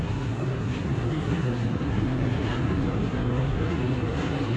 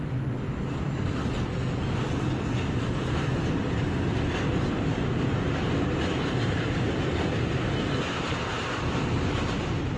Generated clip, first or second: first